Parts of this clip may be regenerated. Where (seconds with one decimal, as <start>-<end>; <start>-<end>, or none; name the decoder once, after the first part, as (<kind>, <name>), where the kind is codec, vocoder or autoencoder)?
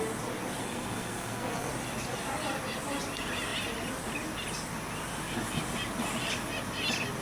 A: 0.6-1.7 (codec, SNAC)